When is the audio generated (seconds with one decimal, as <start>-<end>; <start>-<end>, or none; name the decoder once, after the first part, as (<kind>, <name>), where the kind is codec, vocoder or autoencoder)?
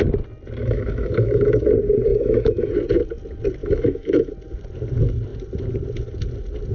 0.6-1.7 (autoencoder, DAC-VAE); 2.1-2.7; 3.6-4.3